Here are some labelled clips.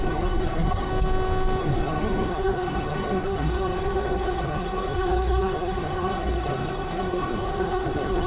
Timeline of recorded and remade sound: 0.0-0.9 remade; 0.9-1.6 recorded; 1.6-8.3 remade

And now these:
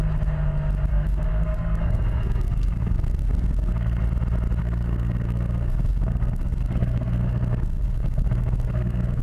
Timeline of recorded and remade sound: 0.0-0.9 recorded; 0.9-4.0 remade; 4.0-4.6 recorded; 4.6-9.2 remade

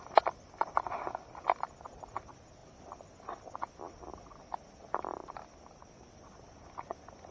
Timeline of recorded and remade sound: 0.0-7.3 recorded

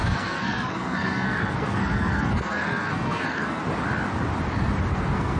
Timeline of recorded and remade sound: 0.0-3.6 remade; 3.6-4.9 recorded; 4.9-5.4 remade

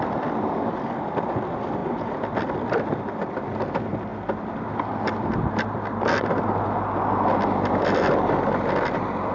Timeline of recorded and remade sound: 0.0-4.1 remade; 4.1-8.8 recorded; 8.8-9.3 remade

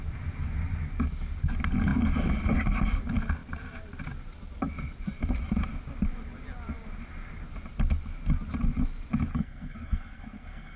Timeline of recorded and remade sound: 0.0-9.3 recorded; 9.3-10.8 remade

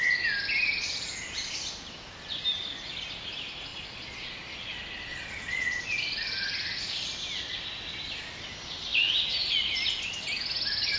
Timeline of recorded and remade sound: 0.0-3.7 recorded; 3.7-4.3 remade; 4.3-5.1 recorded; 5.1-5.8 remade; 5.8-11.0 recorded